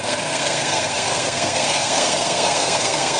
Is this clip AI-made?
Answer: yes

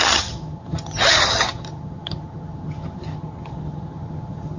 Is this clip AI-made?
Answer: yes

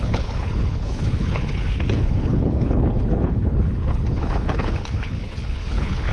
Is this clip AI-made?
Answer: yes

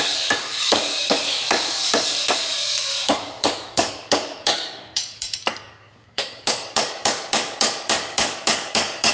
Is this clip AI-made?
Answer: yes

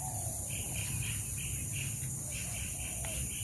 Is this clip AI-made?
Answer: no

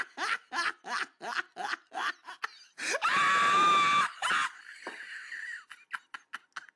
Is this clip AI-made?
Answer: no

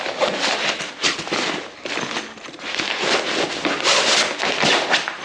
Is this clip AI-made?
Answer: no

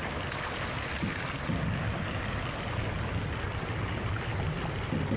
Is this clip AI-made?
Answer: no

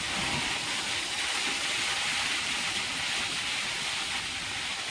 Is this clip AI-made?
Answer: no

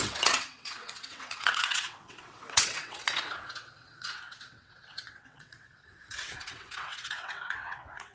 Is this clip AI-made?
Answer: yes